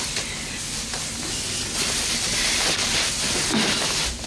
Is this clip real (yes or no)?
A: yes